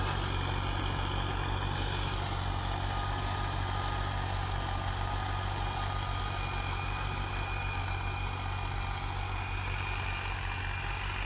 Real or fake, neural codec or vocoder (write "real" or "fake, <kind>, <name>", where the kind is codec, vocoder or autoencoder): real